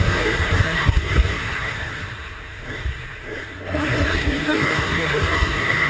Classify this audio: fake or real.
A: fake